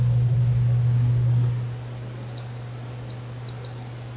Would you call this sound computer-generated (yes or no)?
no